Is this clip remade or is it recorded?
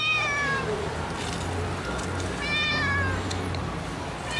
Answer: recorded